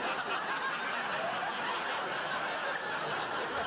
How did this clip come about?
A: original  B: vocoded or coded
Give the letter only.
A